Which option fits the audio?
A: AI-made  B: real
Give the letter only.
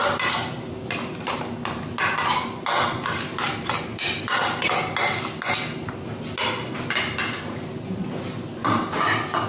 B